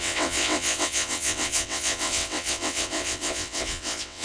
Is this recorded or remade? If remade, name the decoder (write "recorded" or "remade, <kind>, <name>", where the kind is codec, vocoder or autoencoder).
remade, vocoder, WaveNeXt